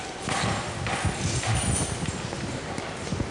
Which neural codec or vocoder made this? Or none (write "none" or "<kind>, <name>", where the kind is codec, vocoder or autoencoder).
none